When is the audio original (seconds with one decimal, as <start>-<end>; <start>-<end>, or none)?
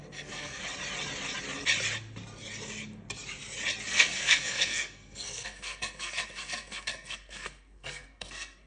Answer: 0.6-3.9